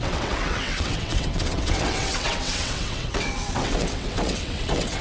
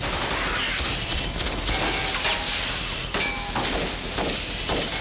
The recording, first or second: second